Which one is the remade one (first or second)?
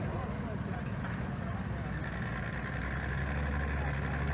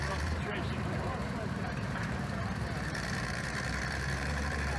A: second